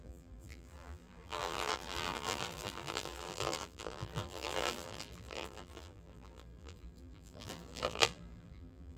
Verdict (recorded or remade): remade